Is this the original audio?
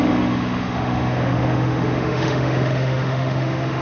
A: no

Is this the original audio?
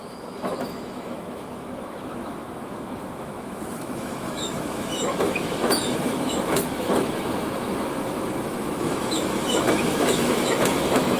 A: no